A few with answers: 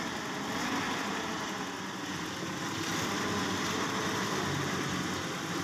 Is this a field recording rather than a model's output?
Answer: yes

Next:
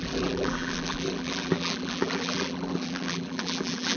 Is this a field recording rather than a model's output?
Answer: no